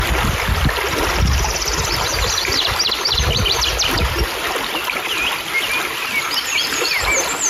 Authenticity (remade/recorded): recorded